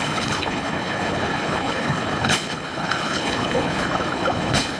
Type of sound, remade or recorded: remade